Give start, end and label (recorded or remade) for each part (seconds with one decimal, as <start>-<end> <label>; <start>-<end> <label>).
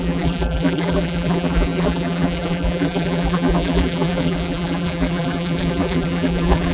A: 0.0-6.7 remade